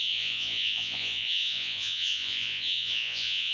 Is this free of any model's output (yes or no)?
no